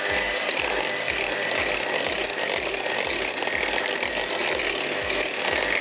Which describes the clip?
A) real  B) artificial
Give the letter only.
A